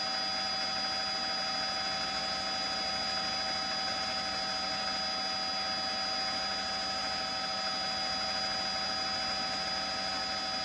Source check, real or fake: real